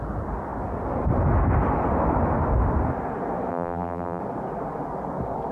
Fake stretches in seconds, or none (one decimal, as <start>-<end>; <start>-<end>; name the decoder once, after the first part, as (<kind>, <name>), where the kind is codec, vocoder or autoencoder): 3.5-4.2 (vocoder, BigVGAN v2)